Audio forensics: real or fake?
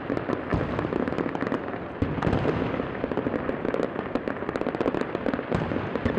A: real